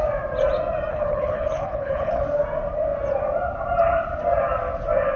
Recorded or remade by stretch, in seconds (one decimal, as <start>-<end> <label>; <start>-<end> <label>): 0.0-0.9 recorded; 0.9-2.2 remade; 2.2-5.2 recorded